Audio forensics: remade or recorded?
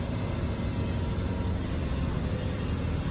recorded